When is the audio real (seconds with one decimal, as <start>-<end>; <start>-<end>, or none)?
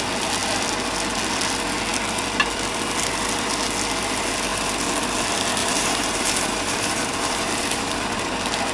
0.0-5.6; 8.0-8.7